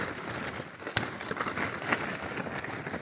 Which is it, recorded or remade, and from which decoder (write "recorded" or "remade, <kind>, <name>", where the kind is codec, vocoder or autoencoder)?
recorded